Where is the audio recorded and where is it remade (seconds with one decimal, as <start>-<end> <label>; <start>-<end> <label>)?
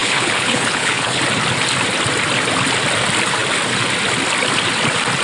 0.0-1.2 remade; 1.2-5.2 recorded